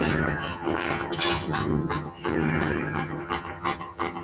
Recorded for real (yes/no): no